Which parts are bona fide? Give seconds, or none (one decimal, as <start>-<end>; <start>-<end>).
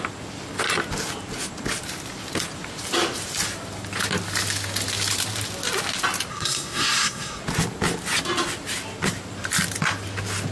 0.0-6.3; 7.4-10.5